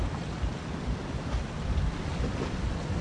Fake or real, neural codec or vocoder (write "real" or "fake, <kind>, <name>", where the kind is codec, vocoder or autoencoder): real